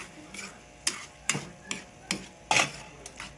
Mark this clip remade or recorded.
recorded